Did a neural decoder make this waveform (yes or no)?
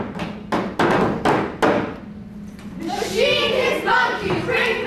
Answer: no